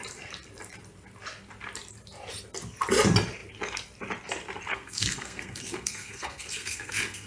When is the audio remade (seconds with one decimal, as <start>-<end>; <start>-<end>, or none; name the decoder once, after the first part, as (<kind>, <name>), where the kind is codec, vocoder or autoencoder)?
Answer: 4.7-7.3 (codec, SNAC)